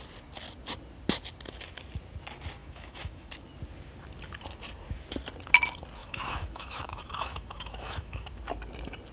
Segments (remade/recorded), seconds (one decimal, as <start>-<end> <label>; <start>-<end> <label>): 0.0-2.6 recorded; 2.6-3.3 remade; 3.3-6.0 recorded; 6.0-8.3 remade; 8.3-9.1 recorded

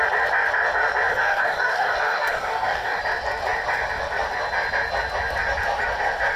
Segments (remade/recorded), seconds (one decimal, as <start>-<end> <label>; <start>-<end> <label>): 0.0-1.1 recorded; 1.1-3.0 remade; 3.0-6.4 recorded

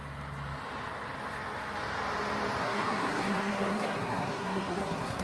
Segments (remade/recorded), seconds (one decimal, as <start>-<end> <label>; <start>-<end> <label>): 0.0-2.6 recorded; 2.6-5.2 remade

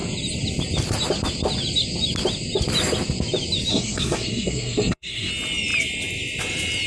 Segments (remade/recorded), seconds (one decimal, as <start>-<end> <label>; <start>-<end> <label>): 0.0-3.7 recorded; 3.7-5.3 remade; 5.3-6.9 recorded

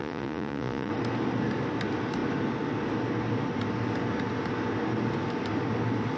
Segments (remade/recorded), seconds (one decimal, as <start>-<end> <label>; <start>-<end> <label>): 0.0-0.9 remade; 0.9-6.2 recorded

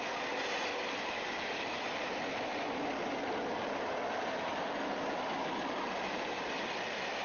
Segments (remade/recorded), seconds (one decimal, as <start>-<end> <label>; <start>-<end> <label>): 0.0-7.2 recorded

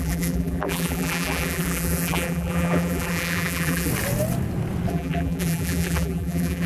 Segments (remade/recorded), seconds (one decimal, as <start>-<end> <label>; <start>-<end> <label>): 0.0-3.9 remade; 3.9-4.9 recorded; 4.9-6.7 remade